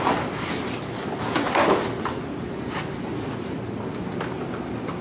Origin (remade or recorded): recorded